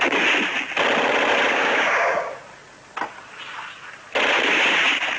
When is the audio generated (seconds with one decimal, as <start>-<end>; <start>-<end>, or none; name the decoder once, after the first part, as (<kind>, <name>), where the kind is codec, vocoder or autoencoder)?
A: 1.5-2.3 (codec, DAC)